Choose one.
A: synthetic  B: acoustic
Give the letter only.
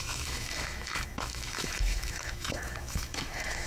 A